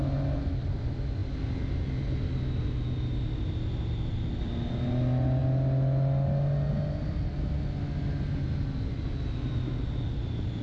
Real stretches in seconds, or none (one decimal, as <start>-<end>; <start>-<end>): 0.0-10.6